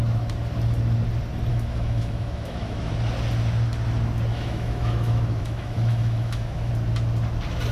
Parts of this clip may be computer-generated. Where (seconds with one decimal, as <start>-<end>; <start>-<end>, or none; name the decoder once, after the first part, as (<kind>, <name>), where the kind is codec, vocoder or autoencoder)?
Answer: 1.5-2.9 (autoencoder, DAC-VAE); 4.3-6.7